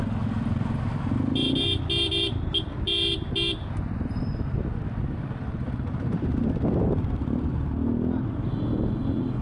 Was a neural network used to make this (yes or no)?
no